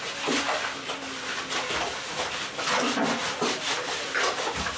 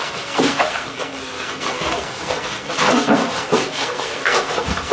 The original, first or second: first